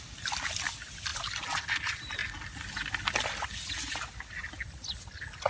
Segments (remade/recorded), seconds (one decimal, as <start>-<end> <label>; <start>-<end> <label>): 0.0-5.5 recorded